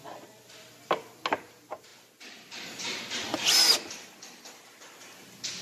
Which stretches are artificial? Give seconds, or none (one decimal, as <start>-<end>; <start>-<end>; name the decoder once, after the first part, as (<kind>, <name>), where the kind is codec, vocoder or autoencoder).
none